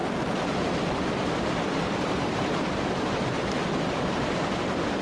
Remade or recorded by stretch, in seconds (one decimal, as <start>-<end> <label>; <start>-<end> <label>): 0.0-3.0 remade; 3.0-5.0 recorded